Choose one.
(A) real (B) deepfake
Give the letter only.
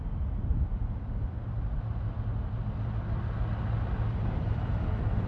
A